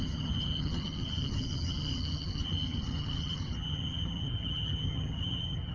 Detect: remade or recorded remade